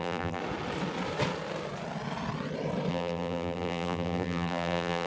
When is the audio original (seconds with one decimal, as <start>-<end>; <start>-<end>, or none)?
0.4-2.9

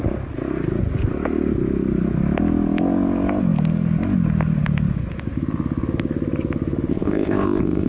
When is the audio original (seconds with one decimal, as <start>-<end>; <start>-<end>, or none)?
0.0-6.9

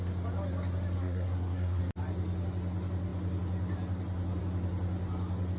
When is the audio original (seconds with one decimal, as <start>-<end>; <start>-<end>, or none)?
0.0-1.0; 1.8-5.6

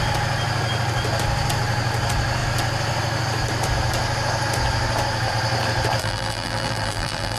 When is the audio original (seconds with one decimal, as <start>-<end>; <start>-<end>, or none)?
0.0-6.0

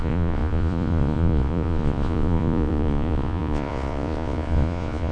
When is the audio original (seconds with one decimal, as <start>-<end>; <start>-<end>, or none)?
none